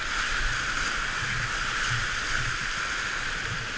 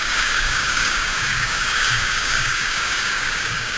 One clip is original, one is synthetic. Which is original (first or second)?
first